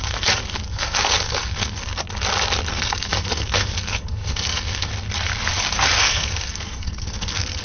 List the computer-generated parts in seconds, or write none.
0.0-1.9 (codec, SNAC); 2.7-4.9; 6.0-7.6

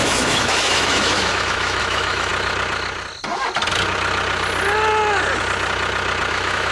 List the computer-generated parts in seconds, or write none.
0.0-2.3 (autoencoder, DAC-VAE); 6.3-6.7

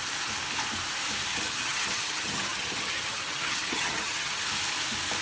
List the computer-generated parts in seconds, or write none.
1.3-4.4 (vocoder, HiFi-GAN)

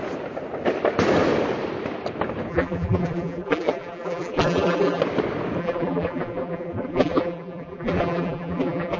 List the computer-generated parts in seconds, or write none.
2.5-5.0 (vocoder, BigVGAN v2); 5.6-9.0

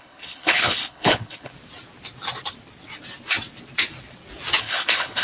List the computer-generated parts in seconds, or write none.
0.0-1.5 (codec, HILCodec); 4.6-5.2

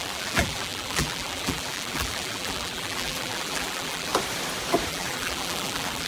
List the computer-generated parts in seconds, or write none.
0.0-4.1 (vocoder, BigVGAN v2); 4.9-6.1

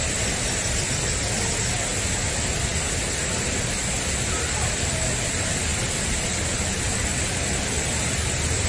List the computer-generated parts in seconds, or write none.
none